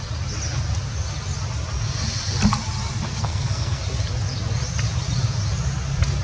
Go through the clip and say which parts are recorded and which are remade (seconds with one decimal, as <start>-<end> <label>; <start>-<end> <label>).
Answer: 0.0-3.1 recorded; 3.1-3.8 remade; 3.8-6.2 recorded